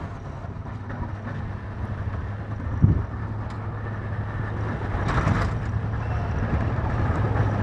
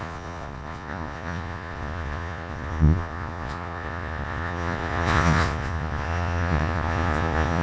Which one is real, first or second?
first